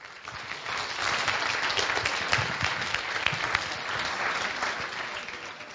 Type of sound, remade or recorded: recorded